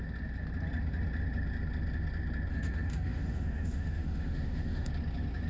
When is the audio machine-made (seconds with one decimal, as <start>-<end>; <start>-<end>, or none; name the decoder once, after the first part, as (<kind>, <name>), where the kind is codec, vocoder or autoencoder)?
2.5-4.9 (autoencoder, DAC-VAE)